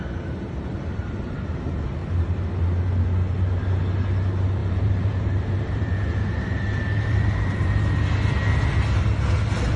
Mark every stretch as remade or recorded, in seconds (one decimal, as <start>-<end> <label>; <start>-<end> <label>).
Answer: 0.0-4.6 recorded; 4.6-7.7 remade; 7.7-9.8 recorded